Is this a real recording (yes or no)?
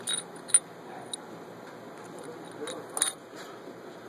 yes